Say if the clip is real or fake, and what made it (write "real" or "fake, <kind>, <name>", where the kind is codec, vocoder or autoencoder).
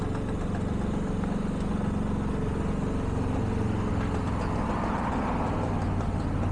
real